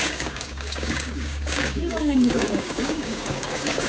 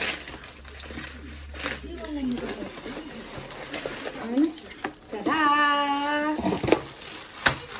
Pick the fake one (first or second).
first